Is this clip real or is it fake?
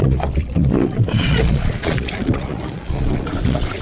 fake